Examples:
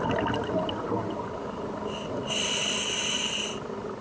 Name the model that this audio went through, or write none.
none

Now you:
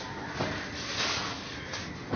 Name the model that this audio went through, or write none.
none